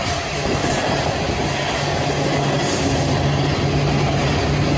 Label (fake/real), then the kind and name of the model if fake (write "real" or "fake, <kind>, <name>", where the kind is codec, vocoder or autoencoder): real